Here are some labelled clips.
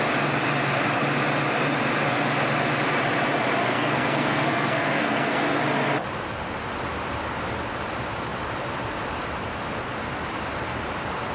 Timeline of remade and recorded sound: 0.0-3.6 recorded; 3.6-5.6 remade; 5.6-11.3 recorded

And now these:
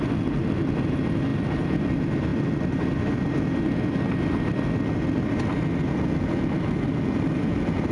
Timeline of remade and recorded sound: 0.0-7.9 recorded

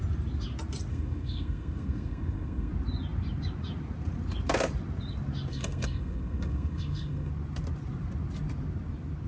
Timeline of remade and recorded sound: 0.0-0.9 recorded; 0.9-2.7 remade; 2.7-5.5 recorded; 5.5-7.3 remade; 7.3-9.3 recorded

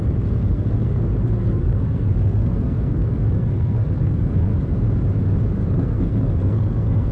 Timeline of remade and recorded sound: 0.0-4.5 remade; 4.5-5.6 recorded; 5.6-7.1 remade

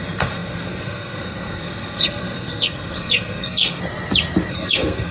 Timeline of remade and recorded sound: 0.0-3.8 remade; 3.8-4.5 recorded; 4.5-5.1 remade

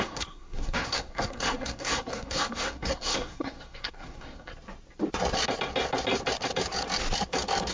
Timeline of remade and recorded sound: 0.0-4.5 remade; 4.5-7.7 recorded

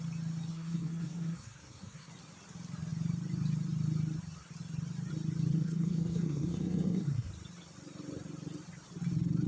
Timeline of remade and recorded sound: 0.0-0.5 recorded; 0.5-2.1 remade; 2.1-5.5 recorded; 5.5-7.3 remade; 7.3-9.5 recorded